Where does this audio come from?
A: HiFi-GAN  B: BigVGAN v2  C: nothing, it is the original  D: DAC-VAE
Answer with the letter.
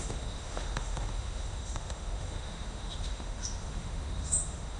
D